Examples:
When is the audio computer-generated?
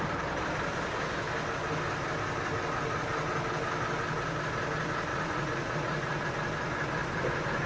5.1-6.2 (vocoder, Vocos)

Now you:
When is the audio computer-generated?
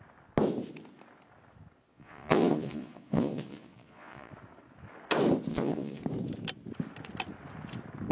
1.9-4.3 (vocoder, Vocos); 5.5-6.0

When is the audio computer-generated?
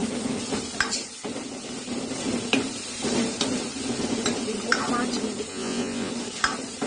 5.5-6.1 (vocoder, Vocos)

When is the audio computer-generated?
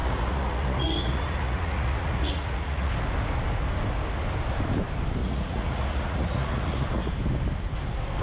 0.0-2.9 (vocoder, Vocos); 5.2-7.1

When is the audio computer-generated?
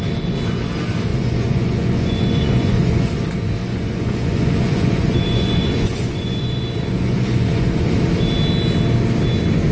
1.1-3.1 (vocoder, Vocos); 3.6-7.9